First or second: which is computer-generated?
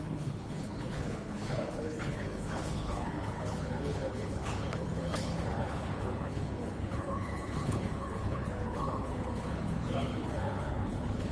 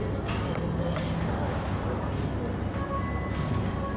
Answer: first